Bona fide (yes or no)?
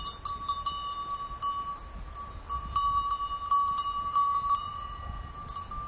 yes